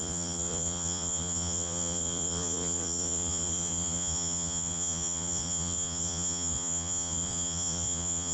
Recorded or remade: remade